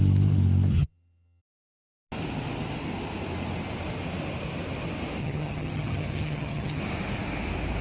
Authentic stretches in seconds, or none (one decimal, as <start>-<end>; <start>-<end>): 0.0-0.7; 1.4-5.2; 6.8-7.8

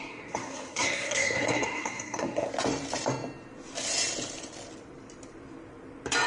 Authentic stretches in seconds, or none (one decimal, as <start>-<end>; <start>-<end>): 2.5-6.3

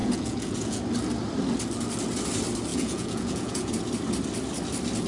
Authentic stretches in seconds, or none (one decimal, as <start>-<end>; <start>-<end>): 0.8-2.7; 3.7-5.1

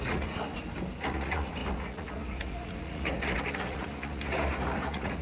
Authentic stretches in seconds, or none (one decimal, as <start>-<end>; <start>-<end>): 0.5-1.0

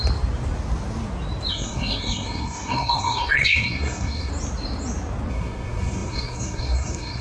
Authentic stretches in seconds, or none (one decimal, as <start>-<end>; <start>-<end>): 0.0-1.5; 4.3-5.3

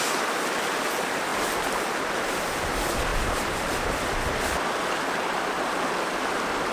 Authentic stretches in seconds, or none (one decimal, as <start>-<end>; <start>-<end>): 0.0-6.7